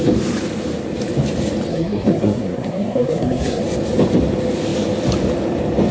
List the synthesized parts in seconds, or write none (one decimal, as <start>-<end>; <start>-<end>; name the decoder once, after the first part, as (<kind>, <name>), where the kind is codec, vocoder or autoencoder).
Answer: 1.7-3.6 (codec, SNAC)